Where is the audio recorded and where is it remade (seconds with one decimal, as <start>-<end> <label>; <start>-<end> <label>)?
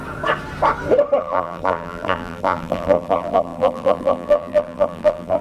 0.0-1.2 recorded; 1.2-5.4 remade